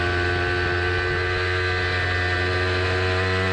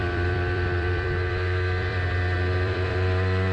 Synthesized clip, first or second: second